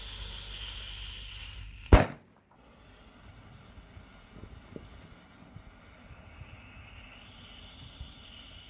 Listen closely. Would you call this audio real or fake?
real